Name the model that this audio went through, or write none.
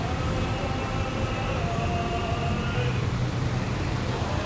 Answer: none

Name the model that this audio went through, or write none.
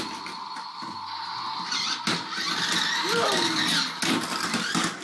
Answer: none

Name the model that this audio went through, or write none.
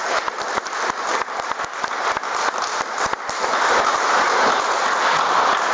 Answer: none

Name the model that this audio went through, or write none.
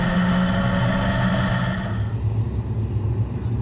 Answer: none